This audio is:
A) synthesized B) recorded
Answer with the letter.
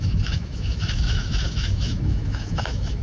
A